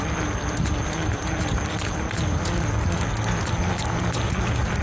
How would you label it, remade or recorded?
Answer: recorded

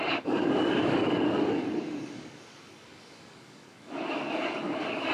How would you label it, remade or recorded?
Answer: remade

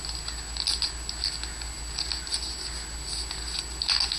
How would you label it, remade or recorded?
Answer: recorded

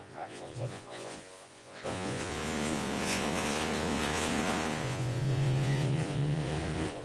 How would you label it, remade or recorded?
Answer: remade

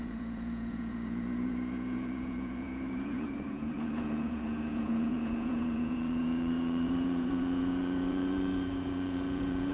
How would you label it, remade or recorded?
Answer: remade